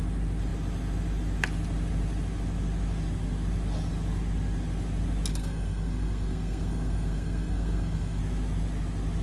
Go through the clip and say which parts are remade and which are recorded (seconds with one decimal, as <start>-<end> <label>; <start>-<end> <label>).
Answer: 0.0-5.3 recorded; 5.3-8.2 remade; 8.2-9.2 recorded

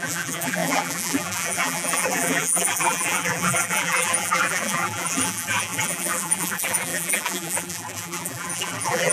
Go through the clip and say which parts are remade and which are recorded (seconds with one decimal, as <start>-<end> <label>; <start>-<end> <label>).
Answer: 0.0-9.1 remade

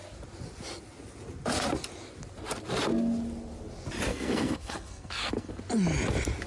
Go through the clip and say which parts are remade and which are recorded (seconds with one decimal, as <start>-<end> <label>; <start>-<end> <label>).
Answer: 0.0-4.1 recorded; 4.1-5.5 remade; 5.5-6.5 recorded